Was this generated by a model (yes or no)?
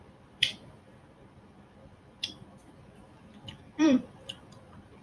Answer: yes